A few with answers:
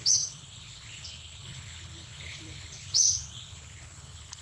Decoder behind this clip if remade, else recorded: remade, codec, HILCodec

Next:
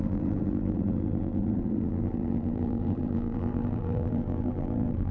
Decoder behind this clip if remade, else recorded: remade, vocoder, BigVGAN v2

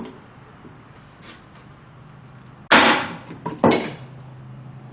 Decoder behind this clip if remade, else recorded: recorded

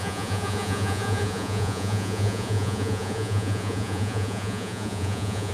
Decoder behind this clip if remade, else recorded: remade, vocoder, Vocos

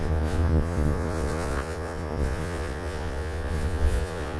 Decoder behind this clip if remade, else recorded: remade, vocoder, Vocos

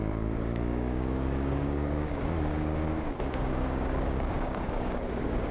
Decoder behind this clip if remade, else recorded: remade, codec, DAC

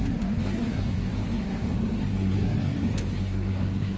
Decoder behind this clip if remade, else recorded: remade, codec, SNAC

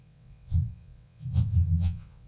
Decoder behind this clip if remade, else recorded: remade, vocoder, WaveNeXt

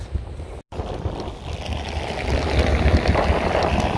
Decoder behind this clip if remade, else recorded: recorded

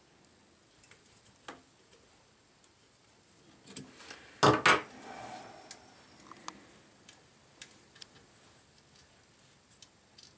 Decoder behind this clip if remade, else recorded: recorded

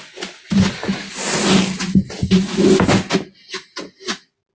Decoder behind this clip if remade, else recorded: recorded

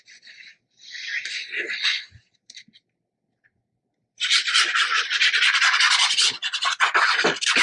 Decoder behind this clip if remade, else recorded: recorded